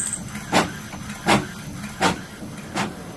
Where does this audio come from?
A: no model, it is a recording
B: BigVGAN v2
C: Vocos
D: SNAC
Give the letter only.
A